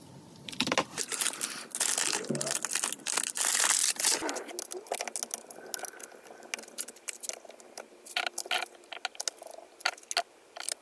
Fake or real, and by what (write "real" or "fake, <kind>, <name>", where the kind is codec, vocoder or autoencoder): real